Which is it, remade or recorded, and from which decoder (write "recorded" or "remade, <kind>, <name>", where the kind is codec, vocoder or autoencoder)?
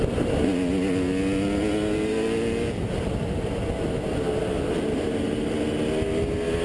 recorded